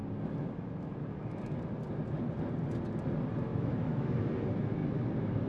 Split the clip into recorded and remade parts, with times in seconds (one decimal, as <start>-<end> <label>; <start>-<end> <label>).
0.0-3.5 recorded; 3.5-4.3 remade; 4.3-5.5 recorded